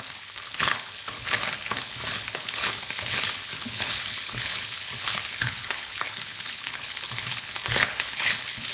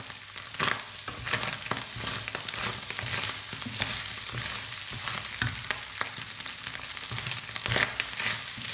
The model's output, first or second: first